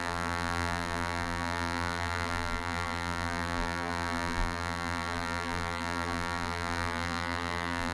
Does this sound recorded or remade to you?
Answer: remade